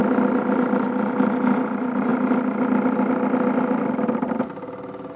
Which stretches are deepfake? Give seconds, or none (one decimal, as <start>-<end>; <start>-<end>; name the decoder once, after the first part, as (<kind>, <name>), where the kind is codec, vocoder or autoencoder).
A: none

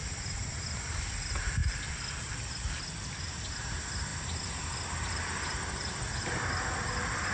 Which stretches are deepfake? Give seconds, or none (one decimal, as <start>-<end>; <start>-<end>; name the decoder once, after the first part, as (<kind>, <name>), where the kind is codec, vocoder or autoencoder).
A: 1.6-3.3 (vocoder, BigVGAN v2); 4.1-7.3

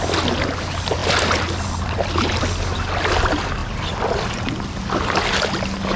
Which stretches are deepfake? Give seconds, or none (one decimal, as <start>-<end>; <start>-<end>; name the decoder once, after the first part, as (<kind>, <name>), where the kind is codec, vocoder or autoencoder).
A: none

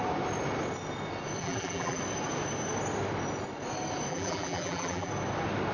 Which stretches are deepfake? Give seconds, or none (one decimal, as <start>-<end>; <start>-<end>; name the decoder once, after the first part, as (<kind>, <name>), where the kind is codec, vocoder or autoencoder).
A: 1.4-2.0 (vocoder, BigVGAN v2); 4.1-5.1

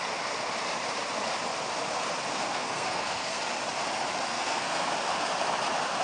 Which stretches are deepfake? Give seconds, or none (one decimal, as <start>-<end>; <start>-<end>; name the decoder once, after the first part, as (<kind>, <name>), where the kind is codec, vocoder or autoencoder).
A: 2.3-3.4 (codec, SNAC); 4.3-4.9

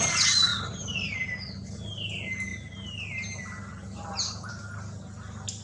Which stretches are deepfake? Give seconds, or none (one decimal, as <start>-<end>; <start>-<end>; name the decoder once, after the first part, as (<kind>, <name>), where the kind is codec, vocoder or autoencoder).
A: none

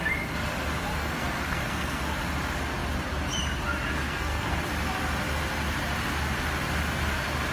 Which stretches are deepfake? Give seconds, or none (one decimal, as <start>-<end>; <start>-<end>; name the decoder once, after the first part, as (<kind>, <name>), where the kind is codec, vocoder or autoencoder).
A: 0.9-2.0 (codec, SNAC); 4.0-4.6

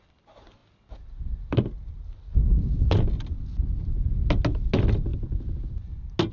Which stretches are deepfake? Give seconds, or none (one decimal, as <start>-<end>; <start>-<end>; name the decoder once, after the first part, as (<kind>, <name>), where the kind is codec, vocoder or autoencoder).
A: none